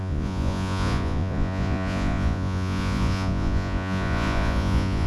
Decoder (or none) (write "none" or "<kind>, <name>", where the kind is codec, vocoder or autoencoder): vocoder, Vocos